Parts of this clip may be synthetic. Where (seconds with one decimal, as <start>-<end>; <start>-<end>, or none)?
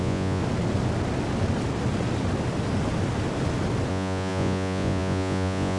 0.0-0.4; 3.9-5.8